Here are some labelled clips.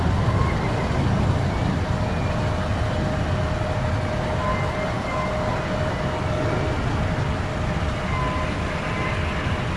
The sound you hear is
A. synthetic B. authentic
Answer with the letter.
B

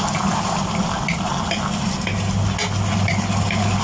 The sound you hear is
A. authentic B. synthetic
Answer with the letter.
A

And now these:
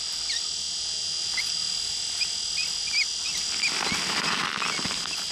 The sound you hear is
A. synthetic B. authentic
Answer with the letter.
B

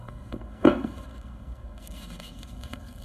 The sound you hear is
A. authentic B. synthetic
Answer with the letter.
B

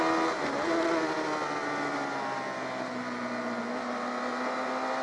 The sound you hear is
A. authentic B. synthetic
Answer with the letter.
A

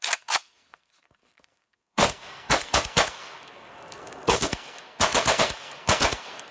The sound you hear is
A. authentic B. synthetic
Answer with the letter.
B